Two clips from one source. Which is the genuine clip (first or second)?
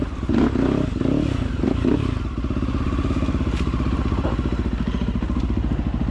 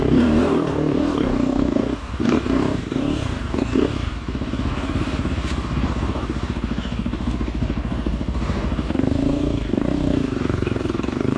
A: first